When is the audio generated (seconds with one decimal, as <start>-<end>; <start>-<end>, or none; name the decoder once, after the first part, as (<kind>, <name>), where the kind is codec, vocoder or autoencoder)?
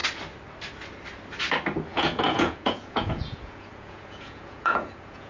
1.9-5.3 (vocoder, Vocos)